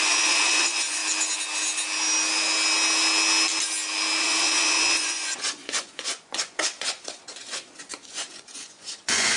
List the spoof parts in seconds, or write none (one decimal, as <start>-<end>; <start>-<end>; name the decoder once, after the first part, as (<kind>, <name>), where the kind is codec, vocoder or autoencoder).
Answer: 0.0-1.0 (vocoder, Vocos); 4.2-9.4